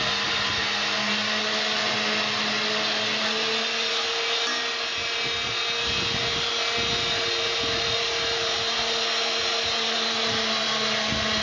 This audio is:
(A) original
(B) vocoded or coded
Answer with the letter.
A